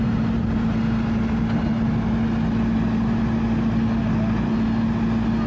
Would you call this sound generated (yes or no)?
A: no